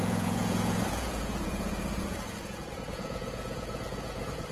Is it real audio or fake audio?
fake